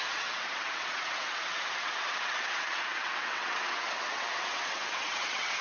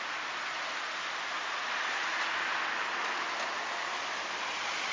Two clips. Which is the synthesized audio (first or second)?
first